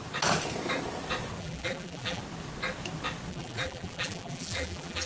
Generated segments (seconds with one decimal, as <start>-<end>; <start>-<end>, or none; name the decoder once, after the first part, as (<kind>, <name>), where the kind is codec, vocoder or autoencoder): 1.4-2.2 (vocoder, BigVGAN v2); 3.3-5.1